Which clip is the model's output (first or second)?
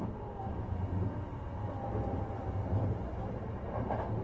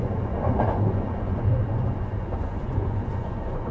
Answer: second